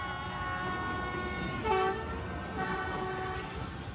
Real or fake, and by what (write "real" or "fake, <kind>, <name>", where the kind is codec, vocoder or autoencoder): real